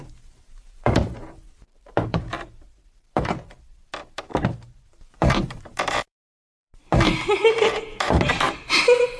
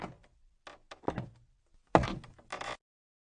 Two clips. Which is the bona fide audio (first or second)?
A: second